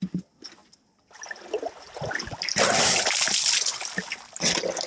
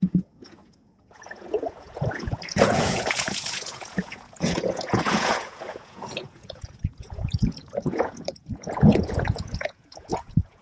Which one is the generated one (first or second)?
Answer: second